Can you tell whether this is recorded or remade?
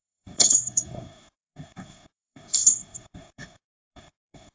remade